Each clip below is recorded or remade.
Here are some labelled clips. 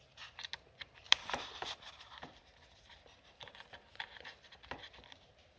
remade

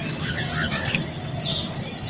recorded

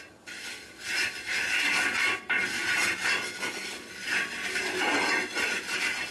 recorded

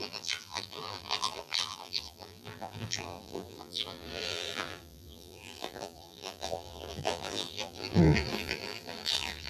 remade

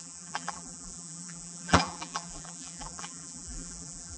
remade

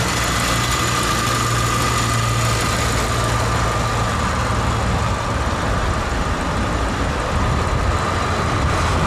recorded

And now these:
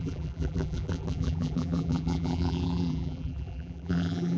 remade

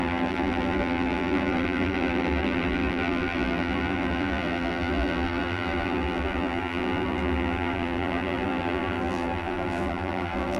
remade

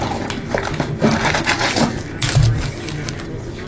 recorded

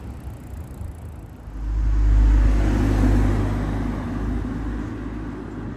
recorded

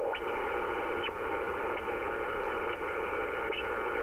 recorded